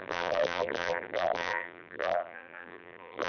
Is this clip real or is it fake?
fake